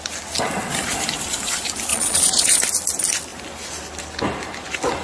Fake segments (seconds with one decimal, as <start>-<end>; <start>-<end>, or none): 1.9-2.6